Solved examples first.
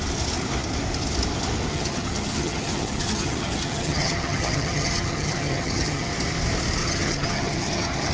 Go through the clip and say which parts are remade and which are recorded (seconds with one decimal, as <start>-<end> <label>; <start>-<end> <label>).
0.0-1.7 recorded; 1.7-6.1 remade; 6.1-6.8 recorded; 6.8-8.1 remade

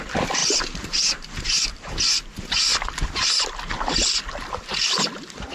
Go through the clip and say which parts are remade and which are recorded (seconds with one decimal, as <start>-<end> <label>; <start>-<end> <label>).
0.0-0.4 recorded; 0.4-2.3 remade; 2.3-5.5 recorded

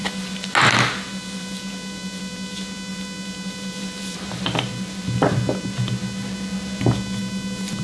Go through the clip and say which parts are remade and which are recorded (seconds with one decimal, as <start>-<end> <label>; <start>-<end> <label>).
0.0-7.8 recorded

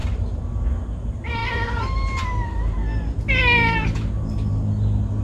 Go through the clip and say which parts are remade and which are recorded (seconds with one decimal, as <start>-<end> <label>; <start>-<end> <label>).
0.0-5.2 recorded

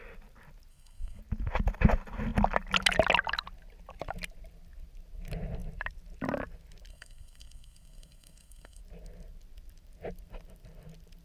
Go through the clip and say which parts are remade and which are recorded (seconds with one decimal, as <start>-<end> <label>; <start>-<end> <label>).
0.0-0.7 recorded; 0.7-1.2 remade; 1.2-6.9 recorded; 6.9-8.8 remade; 8.8-11.2 recorded

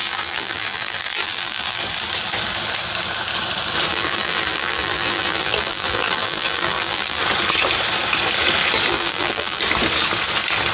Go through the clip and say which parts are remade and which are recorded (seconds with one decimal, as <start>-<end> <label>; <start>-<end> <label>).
0.0-1.8 remade; 1.8-3.9 recorded; 3.9-7.2 remade; 7.2-8.9 recorded; 8.9-9.6 remade; 9.6-10.7 recorded

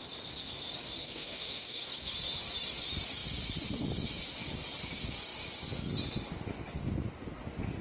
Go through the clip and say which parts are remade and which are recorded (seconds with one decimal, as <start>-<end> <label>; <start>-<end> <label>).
0.0-1.0 recorded; 1.0-1.9 remade; 1.9-7.8 recorded

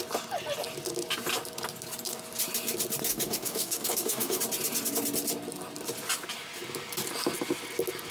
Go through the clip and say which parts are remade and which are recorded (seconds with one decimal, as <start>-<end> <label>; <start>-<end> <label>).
0.0-3.1 recorded; 3.1-4.4 remade; 4.4-8.1 recorded